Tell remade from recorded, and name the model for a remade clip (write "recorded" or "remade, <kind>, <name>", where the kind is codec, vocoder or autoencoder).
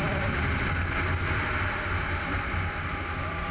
recorded